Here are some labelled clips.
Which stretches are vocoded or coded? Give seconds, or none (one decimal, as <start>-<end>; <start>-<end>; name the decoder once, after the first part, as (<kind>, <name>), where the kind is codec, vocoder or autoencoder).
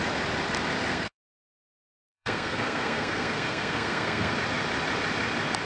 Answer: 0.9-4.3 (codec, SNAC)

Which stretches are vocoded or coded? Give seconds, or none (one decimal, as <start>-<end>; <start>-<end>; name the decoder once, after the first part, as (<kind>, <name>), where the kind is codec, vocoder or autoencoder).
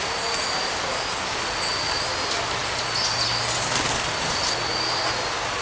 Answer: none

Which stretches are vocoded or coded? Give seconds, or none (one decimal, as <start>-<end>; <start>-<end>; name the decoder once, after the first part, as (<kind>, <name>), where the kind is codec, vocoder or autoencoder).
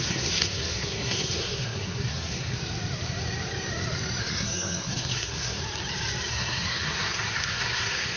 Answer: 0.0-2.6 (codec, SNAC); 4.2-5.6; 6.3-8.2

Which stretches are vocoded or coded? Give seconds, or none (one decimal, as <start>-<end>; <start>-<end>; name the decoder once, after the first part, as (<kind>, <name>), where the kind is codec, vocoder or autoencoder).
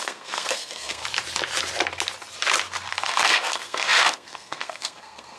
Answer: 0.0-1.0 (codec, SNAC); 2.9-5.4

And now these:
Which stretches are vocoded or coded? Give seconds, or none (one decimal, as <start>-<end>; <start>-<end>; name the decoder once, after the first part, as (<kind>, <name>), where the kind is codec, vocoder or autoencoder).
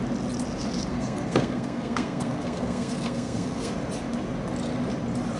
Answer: 0.9-3.7 (codec, SNAC)